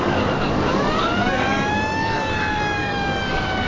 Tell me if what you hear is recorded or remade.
remade